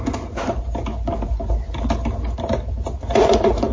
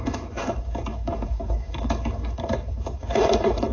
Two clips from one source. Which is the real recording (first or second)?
first